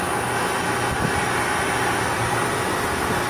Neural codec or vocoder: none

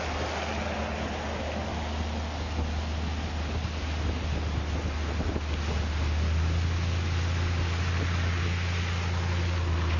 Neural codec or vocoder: none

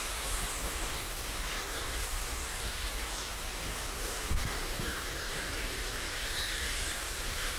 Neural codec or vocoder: codec, DAC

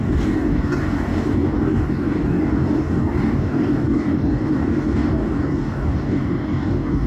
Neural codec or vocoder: codec, DAC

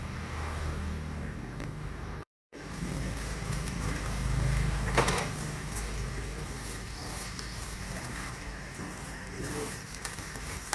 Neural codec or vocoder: codec, DAC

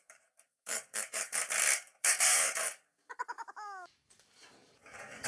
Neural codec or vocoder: codec, DAC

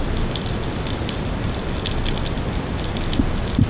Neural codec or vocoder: none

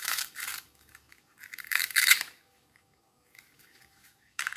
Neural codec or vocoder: codec, DAC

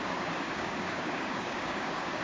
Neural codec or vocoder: codec, DAC